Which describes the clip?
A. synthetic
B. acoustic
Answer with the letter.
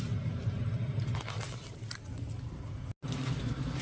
B